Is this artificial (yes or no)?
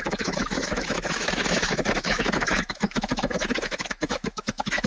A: yes